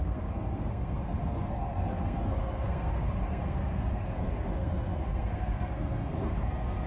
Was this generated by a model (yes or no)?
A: yes